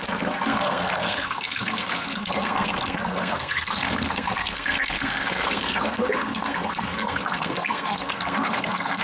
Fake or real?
fake